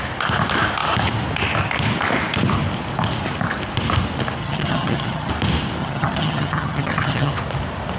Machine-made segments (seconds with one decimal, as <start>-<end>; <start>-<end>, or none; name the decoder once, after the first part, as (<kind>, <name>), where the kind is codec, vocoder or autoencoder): 4.4-5.3 (vocoder, HiFi-GAN); 5.8-7.3